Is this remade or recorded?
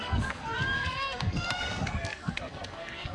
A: remade